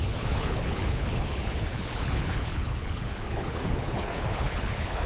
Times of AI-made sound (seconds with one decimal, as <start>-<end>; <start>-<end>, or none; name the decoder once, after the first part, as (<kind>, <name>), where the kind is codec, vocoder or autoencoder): 0.0-5.1 (codec, HILCodec)